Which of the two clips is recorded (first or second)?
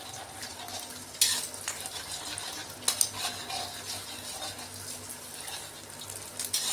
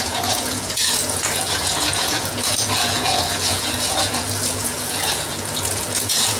first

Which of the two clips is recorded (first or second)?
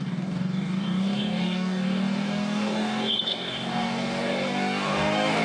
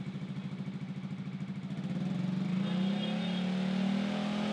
second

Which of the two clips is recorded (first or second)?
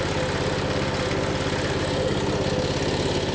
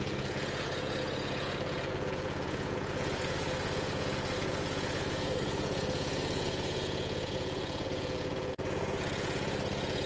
first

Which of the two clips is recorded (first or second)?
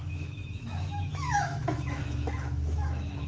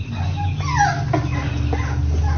second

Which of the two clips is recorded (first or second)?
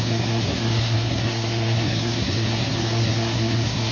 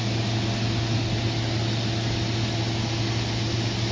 second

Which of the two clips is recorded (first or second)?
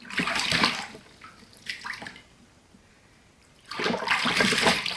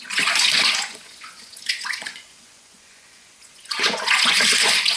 first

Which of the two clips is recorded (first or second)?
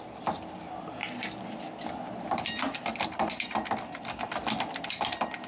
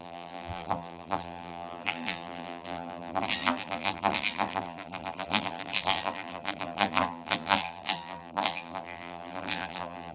first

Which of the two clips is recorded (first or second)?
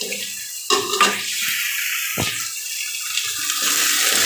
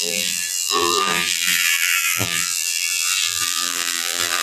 first